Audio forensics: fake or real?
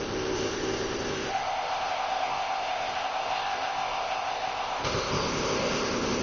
fake